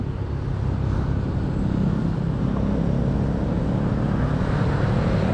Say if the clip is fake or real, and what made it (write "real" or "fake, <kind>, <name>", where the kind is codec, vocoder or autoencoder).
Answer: real